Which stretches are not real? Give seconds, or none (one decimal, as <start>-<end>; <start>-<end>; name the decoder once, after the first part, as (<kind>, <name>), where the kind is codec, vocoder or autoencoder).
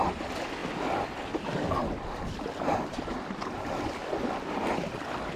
none